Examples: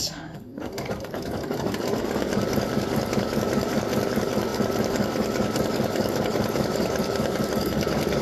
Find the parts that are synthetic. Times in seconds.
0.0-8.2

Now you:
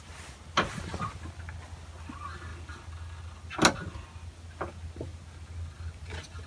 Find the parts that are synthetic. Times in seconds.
none

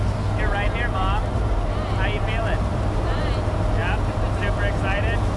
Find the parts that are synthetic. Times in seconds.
none

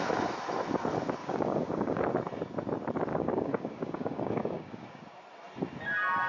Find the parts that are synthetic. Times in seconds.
1.2-2.0; 3.1-5.0

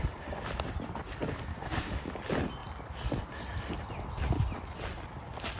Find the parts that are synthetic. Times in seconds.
1.5-2.1

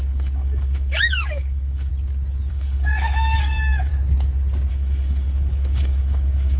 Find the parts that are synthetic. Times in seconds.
0.0-1.9; 2.5-3.9; 4.7-6.6

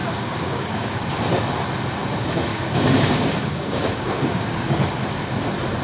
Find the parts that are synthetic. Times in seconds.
0.0-1.1; 2.5-4.9

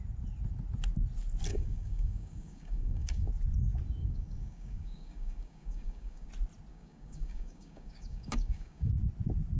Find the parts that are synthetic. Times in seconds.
1.5-3.3; 4.0-6.3; 6.7-8.9